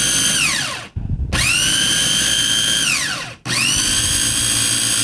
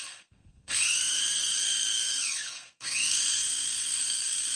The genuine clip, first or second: first